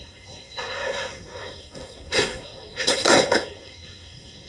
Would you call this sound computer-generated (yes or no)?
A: yes